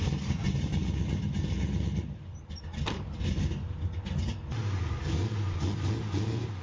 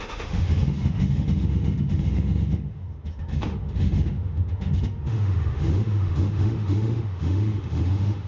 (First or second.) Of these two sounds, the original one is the first